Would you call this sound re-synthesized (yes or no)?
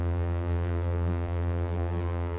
yes